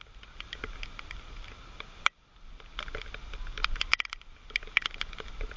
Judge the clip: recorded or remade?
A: recorded